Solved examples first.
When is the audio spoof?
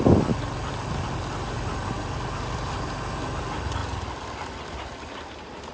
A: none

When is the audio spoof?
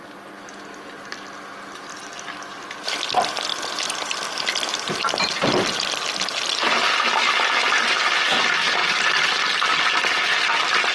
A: none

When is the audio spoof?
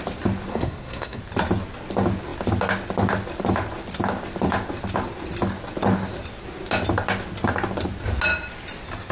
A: 0.5-1.2 (codec, SNAC)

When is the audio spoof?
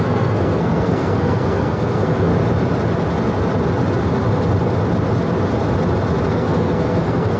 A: 0.0-2.3 (codec, SNAC); 6.3-7.4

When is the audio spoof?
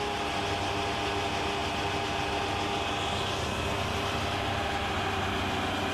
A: none